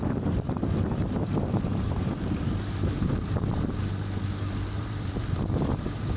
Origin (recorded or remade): remade